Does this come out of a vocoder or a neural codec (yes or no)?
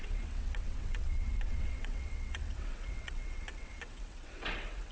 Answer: yes